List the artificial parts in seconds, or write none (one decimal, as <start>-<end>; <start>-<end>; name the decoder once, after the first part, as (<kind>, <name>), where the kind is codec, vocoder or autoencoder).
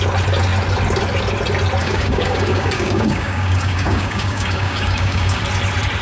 1.8-5.4 (codec, DAC)